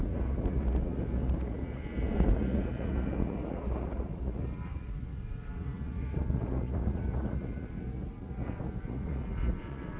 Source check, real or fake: fake